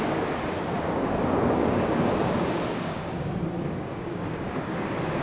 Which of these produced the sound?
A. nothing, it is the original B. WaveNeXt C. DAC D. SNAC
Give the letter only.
C